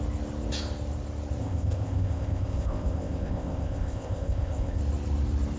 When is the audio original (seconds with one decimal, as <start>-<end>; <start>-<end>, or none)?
0.0-1.4; 4.8-5.6